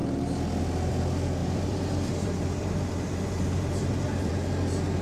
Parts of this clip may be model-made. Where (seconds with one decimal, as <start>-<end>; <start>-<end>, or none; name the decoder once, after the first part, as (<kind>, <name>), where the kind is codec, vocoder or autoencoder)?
1.4-4.3 (vocoder, BigVGAN v2)

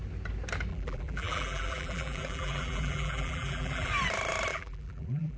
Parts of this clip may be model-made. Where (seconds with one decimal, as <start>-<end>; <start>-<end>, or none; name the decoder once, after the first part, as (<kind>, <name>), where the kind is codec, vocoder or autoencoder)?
0.7-3.9 (vocoder, BigVGAN v2); 4.5-5.4

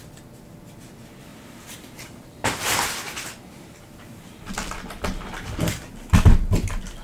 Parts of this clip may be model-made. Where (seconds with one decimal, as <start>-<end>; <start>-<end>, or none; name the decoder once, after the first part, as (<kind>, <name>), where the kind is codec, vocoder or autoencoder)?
1.3-4.5 (vocoder, BigVGAN v2)

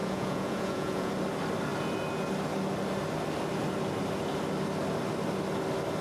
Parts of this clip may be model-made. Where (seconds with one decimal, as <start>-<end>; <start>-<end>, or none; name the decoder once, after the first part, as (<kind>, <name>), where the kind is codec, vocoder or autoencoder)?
0.0-1.1 (vocoder, Vocos)

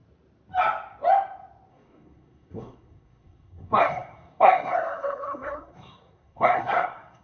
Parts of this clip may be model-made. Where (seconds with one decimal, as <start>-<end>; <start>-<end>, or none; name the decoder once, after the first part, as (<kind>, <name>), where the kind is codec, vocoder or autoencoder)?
1.7-7.2 (codec, SNAC)

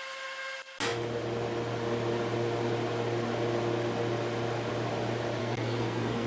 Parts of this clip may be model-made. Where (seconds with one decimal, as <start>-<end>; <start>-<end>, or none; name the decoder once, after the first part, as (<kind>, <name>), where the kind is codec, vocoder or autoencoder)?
5.4-6.3 (codec, SNAC)